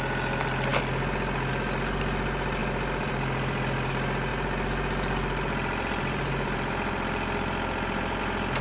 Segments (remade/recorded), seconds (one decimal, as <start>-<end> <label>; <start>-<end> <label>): 0.0-2.6 recorded; 2.6-3.9 remade; 3.9-4.3 recorded; 4.3-8.2 remade; 8.2-8.6 recorded